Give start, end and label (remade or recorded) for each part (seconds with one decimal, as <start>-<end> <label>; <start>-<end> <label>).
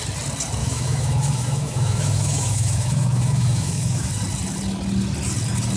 0.0-0.6 recorded; 0.6-4.1 remade; 4.1-5.8 recorded